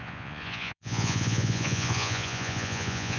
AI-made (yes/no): yes